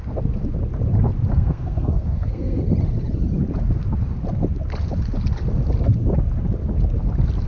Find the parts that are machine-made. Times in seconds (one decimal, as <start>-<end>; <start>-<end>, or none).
1.3-2.6